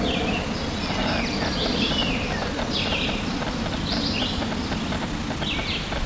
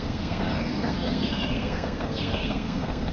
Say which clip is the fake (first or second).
second